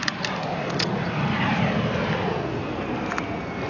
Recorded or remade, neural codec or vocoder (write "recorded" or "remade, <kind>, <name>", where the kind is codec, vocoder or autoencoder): recorded